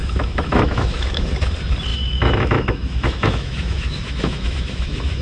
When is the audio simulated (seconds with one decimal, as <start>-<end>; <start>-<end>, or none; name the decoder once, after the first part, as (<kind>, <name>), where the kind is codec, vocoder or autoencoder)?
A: 0.0-1.3 (autoencoder, DAC-VAE); 1.9-5.2